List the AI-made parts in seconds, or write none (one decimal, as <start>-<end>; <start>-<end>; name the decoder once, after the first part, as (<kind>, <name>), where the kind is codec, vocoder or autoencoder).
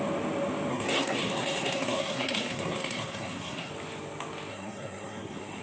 0.7-3.7 (codec, SNAC); 4.5-5.6